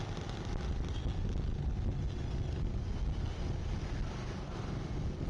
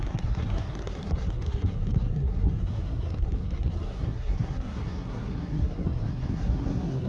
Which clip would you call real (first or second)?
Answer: first